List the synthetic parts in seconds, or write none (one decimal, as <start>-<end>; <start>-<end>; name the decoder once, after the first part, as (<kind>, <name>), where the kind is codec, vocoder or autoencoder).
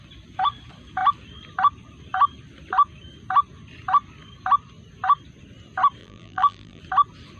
6.0-6.8 (vocoder, BigVGAN v2)